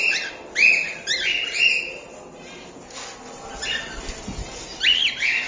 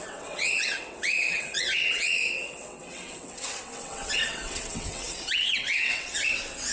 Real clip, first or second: first